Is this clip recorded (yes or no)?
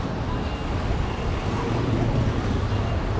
yes